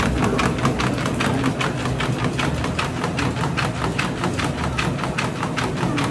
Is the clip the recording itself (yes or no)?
yes